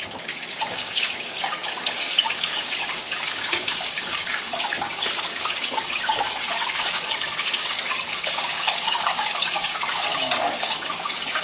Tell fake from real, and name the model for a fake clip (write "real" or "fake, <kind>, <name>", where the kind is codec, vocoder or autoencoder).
fake, codec, DAC